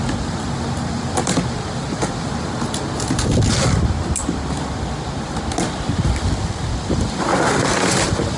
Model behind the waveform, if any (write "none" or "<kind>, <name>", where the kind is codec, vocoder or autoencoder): none